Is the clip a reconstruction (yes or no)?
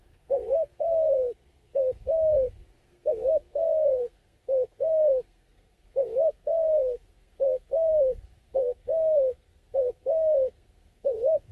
yes